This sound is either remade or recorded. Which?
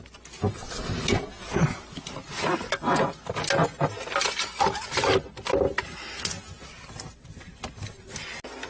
recorded